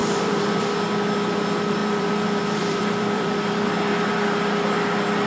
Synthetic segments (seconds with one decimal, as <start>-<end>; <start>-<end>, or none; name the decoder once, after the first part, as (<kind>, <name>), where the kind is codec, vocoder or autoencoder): 0.0-0.6 (vocoder, BigVGAN v2); 1.8-3.7